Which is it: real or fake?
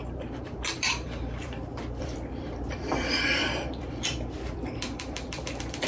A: fake